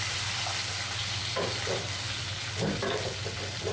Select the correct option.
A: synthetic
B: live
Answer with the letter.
B